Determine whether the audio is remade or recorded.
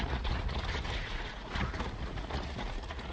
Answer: remade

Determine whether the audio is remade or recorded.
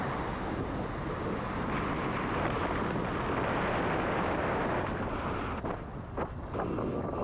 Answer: recorded